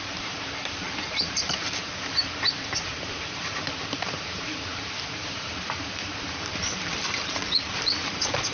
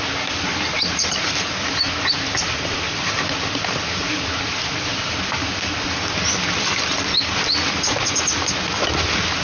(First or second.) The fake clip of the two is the first